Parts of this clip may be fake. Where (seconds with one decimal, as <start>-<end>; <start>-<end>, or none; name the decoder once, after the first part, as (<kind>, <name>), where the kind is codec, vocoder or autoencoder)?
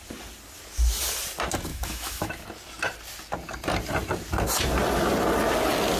1.7-2.3 (autoencoder, DAC-VAE)